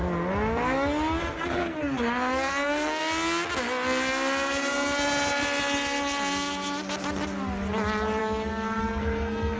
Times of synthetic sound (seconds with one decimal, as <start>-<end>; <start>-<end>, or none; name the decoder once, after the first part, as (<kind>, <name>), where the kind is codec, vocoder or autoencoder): 1.2-3.0 (codec, SNAC); 8.2-9.6